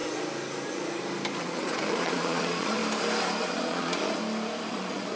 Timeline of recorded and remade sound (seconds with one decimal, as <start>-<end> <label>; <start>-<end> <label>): 0.0-1.4 recorded; 1.4-2.8 remade; 2.8-3.4 recorded; 3.4-4.2 remade; 4.2-4.7 recorded; 4.7-5.2 remade

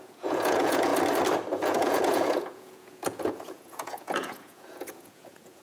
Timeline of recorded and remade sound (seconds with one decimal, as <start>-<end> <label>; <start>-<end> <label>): 0.0-0.9 remade; 0.9-1.5 recorded; 1.5-5.6 remade

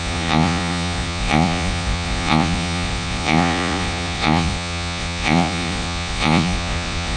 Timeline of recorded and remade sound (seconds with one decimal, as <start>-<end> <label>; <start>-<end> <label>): 0.0-7.2 remade

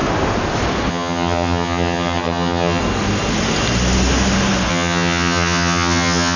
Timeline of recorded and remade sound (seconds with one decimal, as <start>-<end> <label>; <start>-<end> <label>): 0.0-0.9 recorded; 0.9-2.8 remade; 2.8-4.7 recorded; 4.7-6.4 remade